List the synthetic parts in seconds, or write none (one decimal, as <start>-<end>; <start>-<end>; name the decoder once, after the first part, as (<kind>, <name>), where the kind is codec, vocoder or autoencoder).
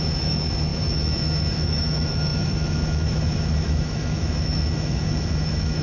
0.0-5.8 (autoencoder, DAC-VAE)